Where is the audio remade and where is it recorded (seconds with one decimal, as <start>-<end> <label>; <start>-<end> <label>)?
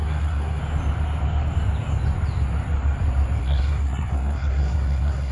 0.0-0.6 remade; 0.6-3.4 recorded; 3.4-5.3 remade